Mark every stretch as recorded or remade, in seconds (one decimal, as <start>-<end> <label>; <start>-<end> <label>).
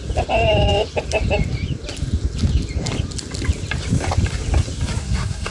0.0-5.0 recorded; 5.0-5.5 remade